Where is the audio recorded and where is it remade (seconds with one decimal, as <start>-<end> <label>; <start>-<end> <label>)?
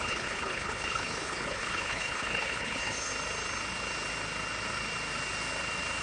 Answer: 0.0-3.1 remade; 3.1-6.0 recorded